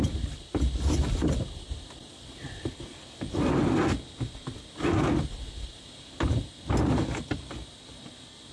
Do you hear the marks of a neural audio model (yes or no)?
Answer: no